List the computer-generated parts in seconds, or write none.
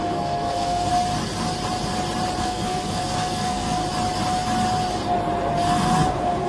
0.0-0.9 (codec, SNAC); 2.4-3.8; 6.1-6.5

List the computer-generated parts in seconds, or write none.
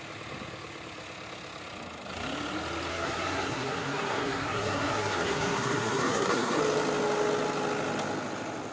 2.9-6.6 (codec, SNAC)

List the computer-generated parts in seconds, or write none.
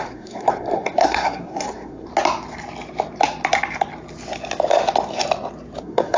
0.0-2.1 (codec, SNAC); 5.8-6.2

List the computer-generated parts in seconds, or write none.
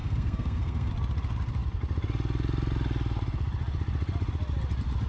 0.0-0.9 (codec, SNAC)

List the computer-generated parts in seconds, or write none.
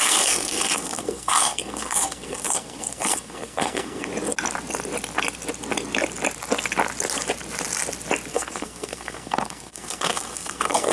0.0-4.1 (codec, SNAC); 8.3-10.9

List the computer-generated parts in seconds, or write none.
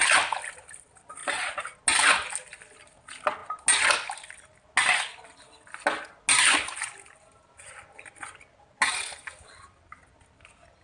none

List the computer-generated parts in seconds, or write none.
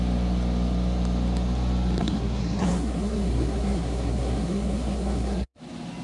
2.0-5.6 (codec, SNAC)